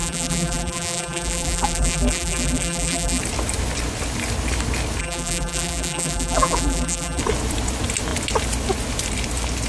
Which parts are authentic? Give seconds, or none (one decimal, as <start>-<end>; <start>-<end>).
3.2-5.0; 7.2-9.7